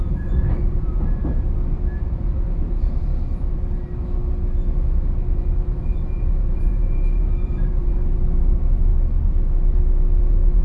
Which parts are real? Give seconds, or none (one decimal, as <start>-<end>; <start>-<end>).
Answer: 1.2-2.0; 3.1-5.8; 8.9-10.2